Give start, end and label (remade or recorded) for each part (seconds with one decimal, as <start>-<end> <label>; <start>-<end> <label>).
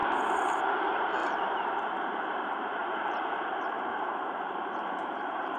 0.0-0.6 recorded; 0.6-5.6 remade